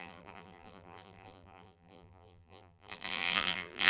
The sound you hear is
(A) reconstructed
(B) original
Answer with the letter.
A